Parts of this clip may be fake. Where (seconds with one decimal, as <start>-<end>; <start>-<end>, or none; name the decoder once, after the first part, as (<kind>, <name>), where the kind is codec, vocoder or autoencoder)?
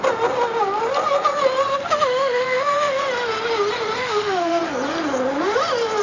1.7-3.0 (autoencoder, DAC-VAE); 4.0-4.6